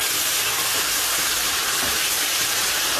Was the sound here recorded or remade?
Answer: remade